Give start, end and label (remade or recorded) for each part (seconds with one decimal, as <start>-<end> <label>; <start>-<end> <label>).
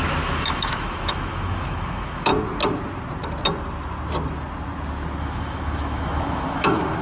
0.0-2.3 remade; 2.3-5.2 recorded; 5.2-7.0 remade